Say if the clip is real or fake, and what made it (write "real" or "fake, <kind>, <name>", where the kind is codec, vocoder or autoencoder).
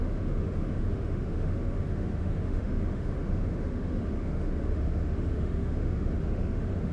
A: fake, autoencoder, DAC-VAE